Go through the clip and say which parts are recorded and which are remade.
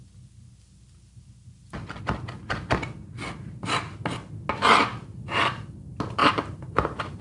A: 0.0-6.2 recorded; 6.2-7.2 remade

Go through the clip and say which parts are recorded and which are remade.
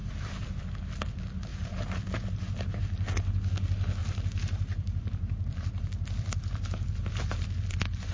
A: 0.0-0.6 remade; 0.6-1.5 recorded; 1.5-2.8 remade; 2.8-4.0 recorded; 4.0-8.1 remade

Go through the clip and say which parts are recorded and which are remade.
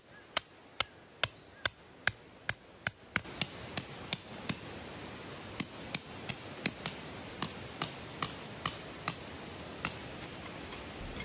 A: 0.0-11.2 recorded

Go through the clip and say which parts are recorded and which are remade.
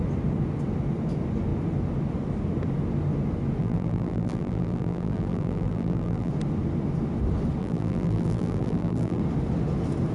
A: 0.0-3.6 recorded; 3.6-6.3 remade; 6.3-7.6 recorded; 7.6-9.2 remade; 9.2-10.1 recorded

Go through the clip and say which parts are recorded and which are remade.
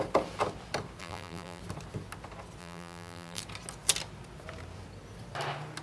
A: 0.0-1.0 recorded; 1.0-1.6 remade; 1.6-2.6 recorded; 2.6-3.4 remade; 3.4-5.8 recorded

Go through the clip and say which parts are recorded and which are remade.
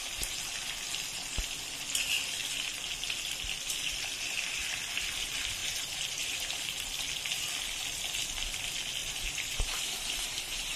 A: 0.0-5.6 recorded; 5.6-6.4 remade; 6.4-9.0 recorded; 9.0-10.8 remade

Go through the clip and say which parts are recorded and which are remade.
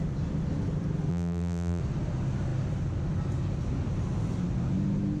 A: 0.0-1.1 recorded; 1.1-1.8 remade; 1.8-5.2 recorded